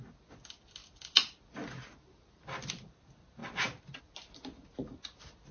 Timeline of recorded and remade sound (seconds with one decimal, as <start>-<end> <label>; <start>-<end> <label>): 0.0-5.5 recorded